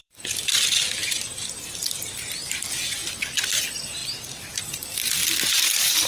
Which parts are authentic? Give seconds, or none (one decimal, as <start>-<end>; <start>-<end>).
3.0-3.6; 4.0-4.6; 5.2-6.1